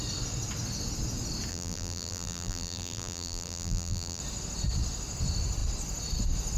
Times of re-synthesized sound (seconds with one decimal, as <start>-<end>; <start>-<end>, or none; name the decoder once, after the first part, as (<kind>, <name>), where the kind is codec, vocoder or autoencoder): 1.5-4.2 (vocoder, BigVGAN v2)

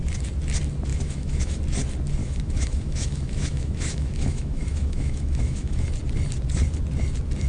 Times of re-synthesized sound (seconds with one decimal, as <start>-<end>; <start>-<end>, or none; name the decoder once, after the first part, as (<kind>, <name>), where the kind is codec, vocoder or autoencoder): 0.9-1.6 (autoencoder, DAC-VAE); 2.2-5.9

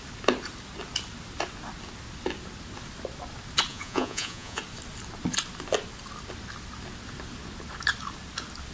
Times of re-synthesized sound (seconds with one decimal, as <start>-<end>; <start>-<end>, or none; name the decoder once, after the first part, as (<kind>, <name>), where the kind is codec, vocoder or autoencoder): 3.7-4.6 (vocoder, Vocos)

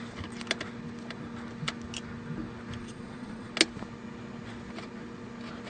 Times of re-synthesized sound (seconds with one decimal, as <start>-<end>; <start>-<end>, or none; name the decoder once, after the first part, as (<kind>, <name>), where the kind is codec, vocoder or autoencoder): 2.8-3.5 (vocoder, Vocos)

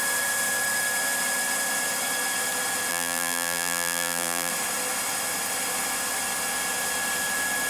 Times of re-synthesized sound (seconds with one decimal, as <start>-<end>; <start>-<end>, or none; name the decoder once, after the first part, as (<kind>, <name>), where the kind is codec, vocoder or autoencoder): 2.9-4.5 (vocoder, BigVGAN v2)